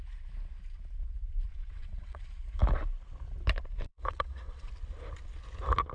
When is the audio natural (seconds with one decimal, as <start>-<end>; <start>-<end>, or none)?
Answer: 0.0-1.5; 2.2-3.9; 4.7-5.9